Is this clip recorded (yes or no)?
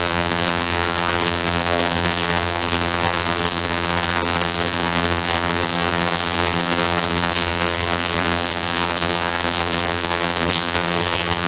no